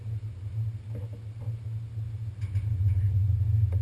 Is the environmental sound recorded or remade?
recorded